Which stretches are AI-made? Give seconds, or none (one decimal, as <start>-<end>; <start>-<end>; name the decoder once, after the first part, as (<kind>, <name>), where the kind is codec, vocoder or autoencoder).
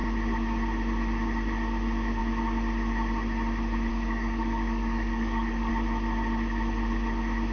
3.9-5.7 (codec, DAC)